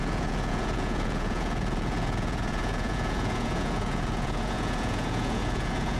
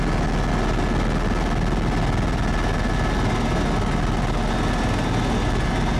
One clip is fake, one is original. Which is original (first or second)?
second